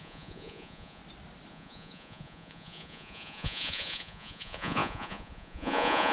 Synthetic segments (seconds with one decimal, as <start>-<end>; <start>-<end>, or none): 0.0-1.0; 1.5-6.1

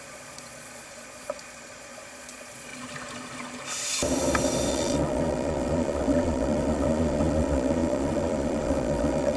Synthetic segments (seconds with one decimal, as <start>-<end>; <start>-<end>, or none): 0.0-2.7; 4.7-9.4

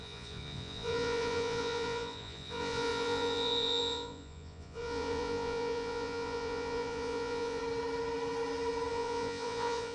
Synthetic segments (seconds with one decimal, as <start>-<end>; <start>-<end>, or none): 0.0-7.6; 8.9-9.9

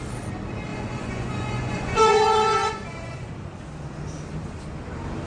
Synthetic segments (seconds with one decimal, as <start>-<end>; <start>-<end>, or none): 0.7-3.3

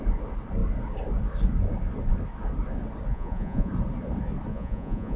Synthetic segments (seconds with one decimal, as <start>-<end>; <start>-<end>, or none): 3.1-3.7; 4.5-5.2